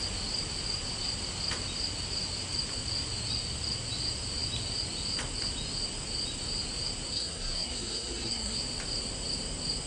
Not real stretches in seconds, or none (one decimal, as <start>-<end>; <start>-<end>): 7.1-8.6